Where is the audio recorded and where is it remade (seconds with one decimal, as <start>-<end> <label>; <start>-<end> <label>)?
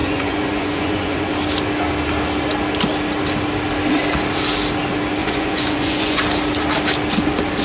0.0-1.3 remade; 1.3-5.2 recorded; 5.2-6.2 remade; 6.2-7.6 recorded